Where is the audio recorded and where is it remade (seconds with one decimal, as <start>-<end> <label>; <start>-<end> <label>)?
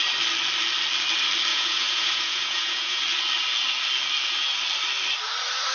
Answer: 0.0-1.5 recorded; 1.5-3.0 remade; 3.0-5.7 recorded